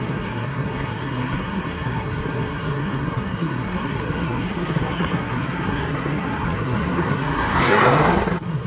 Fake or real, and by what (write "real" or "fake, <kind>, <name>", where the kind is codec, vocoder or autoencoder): fake, codec, SNAC